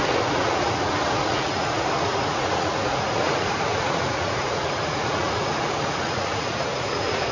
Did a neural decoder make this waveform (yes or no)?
yes